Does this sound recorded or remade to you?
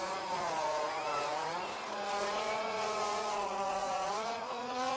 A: remade